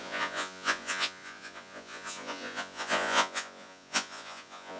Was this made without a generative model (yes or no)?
no